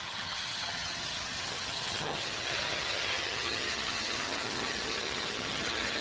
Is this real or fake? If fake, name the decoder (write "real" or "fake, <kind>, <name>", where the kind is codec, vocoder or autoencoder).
fake, vocoder, HiFi-GAN